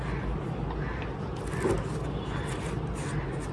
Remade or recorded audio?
recorded